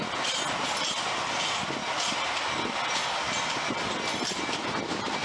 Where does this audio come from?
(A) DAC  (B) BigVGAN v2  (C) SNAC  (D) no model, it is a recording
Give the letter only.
D